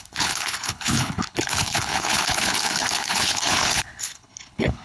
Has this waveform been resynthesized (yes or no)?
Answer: yes